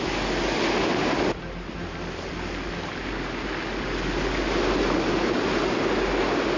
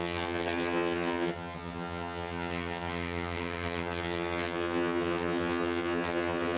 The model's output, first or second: second